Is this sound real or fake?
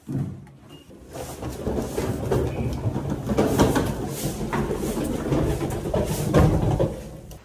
real